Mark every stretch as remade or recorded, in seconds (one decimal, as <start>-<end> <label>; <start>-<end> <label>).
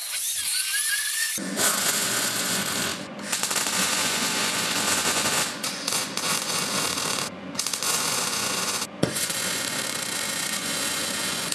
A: 0.0-0.4 remade; 0.4-0.9 recorded; 0.9-11.5 remade